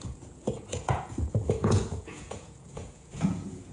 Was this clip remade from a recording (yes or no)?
yes